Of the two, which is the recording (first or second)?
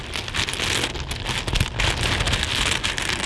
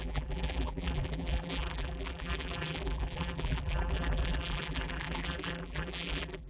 first